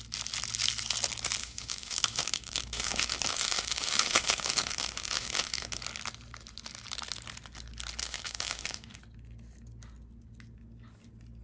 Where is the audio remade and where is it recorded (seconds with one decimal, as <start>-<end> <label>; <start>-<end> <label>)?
0.0-1.4 recorded; 1.4-5.8 remade; 5.8-8.0 recorded; 8.0-9.0 remade; 9.0-11.4 recorded